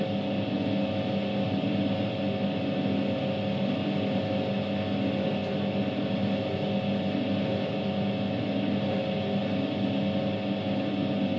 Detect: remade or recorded recorded